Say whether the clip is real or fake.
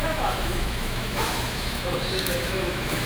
fake